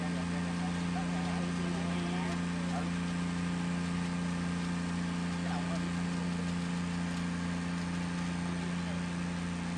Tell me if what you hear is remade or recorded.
recorded